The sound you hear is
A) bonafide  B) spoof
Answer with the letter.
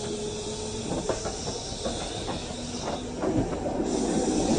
A